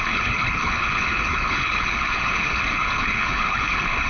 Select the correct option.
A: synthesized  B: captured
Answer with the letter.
A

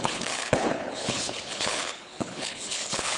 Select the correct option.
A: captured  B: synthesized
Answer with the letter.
B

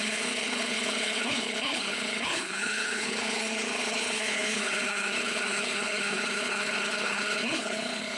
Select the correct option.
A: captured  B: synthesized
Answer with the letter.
B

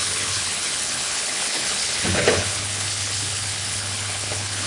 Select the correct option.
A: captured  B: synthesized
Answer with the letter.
B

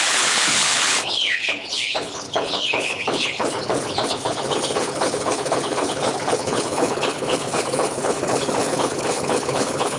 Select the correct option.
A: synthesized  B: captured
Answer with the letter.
A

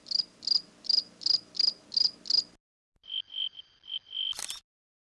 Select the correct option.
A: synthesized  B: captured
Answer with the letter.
B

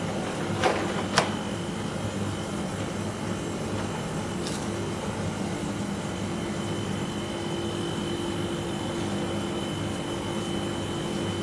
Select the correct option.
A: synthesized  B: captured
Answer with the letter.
B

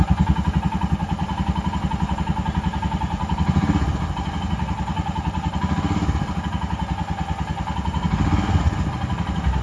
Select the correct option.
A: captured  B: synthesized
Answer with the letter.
A